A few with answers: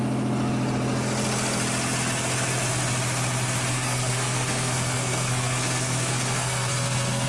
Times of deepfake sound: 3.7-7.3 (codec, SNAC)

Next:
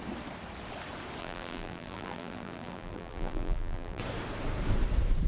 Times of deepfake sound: 1.2-4.0 (vocoder, BigVGAN v2)

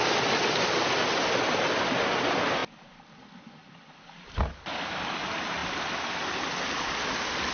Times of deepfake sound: none

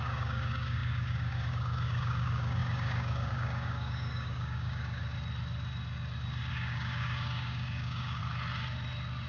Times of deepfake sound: 0.0-5.0 (codec, DAC); 6.5-8.2

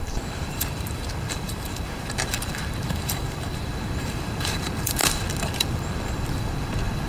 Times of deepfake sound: 0.0-7.1 (vocoder, BigVGAN v2)